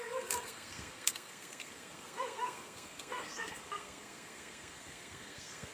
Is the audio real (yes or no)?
no